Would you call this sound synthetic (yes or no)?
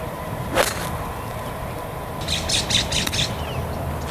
no